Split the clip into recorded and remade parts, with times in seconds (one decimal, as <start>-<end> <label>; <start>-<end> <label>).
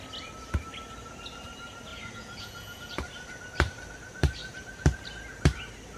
0.0-1.9 recorded; 1.9-2.9 remade; 2.9-6.0 recorded